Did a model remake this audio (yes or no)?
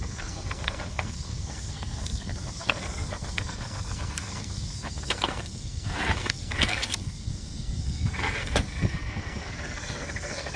yes